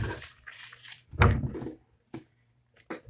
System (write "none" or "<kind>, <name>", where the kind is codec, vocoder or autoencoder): vocoder, BigVGAN v2